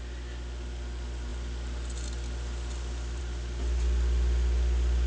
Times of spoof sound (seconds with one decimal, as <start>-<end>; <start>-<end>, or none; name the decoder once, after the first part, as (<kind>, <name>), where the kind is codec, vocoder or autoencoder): none